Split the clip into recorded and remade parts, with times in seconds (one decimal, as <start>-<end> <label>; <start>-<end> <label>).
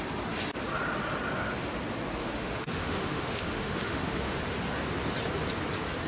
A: 0.0-2.2 recorded; 2.2-4.4 remade; 4.4-6.1 recorded